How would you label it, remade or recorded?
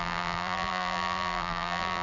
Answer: remade